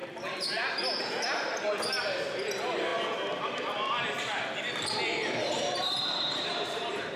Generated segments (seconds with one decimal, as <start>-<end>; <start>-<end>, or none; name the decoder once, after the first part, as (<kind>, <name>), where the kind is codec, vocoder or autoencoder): 5.2-7.2 (vocoder, BigVGAN v2)